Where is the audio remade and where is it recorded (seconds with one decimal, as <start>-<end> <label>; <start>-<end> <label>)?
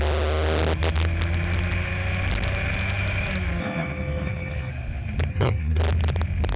0.0-3.6 recorded; 3.6-4.7 remade; 4.7-5.3 recorded; 5.3-5.8 remade; 5.8-6.6 recorded